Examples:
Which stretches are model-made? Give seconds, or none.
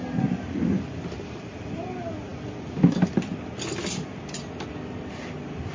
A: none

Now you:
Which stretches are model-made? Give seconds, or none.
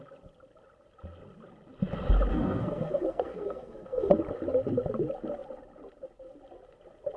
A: 2.3-4.1 (codec, SNAC)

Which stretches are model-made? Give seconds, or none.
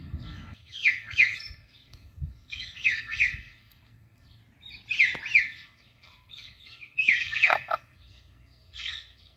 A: 0.0-4.4 (codec, SNAC); 5.4-9.4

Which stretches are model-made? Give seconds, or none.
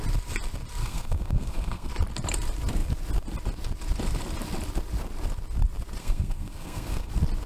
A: 0.8-1.9 (codec, SNAC); 6.0-7.1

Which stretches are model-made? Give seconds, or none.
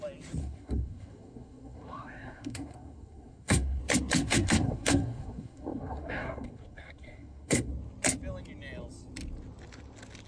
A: 0.4-3.8 (codec, SNAC); 4.2-7.7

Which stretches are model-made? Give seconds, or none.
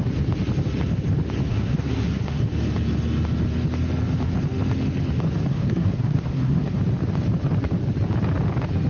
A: 1.5-2.4 (codec, SNAC); 5.5-6.8